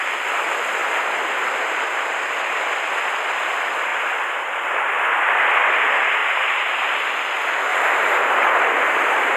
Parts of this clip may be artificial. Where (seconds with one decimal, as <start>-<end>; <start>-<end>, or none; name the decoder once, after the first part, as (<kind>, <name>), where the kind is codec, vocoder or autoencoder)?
0.8-2.2 (vocoder, BigVGAN v2); 6.2-7.1; 7.7-8.5